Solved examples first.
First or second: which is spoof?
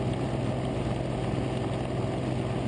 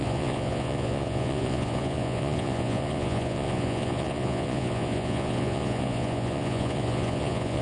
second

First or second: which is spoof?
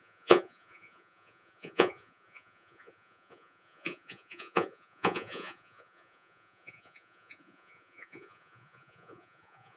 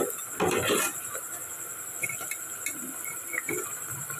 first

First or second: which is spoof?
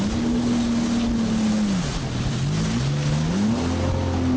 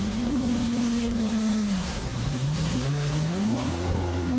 second